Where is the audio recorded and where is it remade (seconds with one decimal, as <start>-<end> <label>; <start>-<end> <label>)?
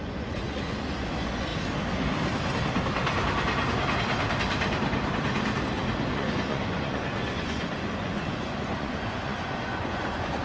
0.0-1.5 remade; 1.5-6.1 recorded; 6.1-10.4 remade